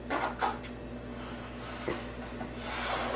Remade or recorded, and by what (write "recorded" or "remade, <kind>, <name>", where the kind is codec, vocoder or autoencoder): recorded